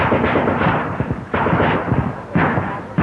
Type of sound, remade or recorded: recorded